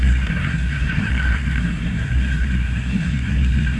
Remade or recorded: remade